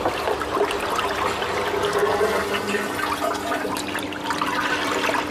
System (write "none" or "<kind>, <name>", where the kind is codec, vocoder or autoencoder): none